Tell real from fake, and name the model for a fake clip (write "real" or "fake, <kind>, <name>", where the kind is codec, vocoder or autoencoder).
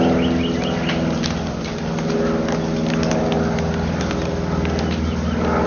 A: real